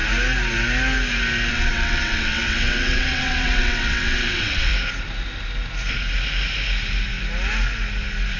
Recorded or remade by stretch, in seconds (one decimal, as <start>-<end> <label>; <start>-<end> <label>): 0.0-1.5 recorded; 1.5-4.7 remade; 4.7-8.4 recorded